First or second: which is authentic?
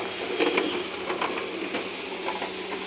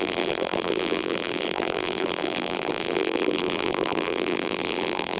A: first